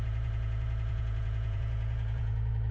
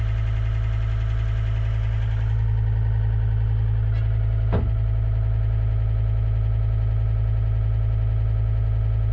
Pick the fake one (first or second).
first